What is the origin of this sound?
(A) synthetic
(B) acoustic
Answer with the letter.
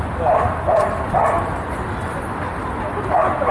B